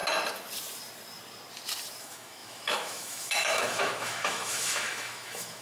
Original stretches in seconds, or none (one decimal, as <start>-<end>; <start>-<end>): 0.0-2.0